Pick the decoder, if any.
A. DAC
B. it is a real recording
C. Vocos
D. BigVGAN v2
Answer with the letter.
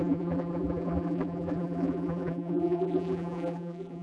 D